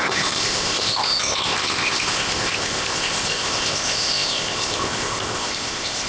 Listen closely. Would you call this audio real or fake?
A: fake